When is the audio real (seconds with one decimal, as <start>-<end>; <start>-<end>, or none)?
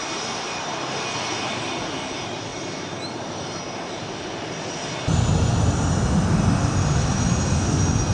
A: 0.0-8.1